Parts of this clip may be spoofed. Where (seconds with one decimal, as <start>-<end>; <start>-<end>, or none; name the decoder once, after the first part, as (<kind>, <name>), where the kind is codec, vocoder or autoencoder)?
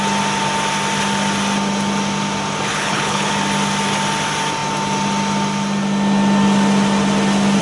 2.7-3.3 (codec, HILCodec)